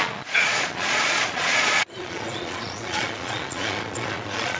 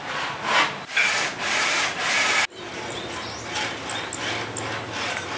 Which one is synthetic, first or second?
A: first